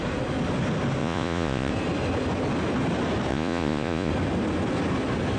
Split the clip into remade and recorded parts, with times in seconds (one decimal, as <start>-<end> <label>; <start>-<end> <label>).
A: 0.0-1.0 recorded; 1.0-1.7 remade; 1.7-3.3 recorded; 3.3-4.1 remade; 4.1-5.4 recorded